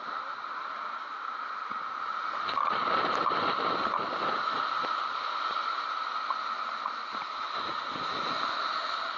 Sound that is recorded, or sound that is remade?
recorded